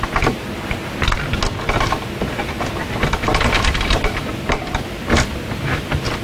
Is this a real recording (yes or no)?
yes